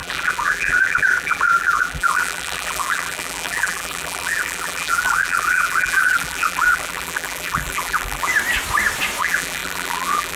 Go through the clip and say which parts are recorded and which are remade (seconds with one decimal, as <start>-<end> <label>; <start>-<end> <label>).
0.0-8.3 remade; 8.3-9.2 recorded; 9.2-10.4 remade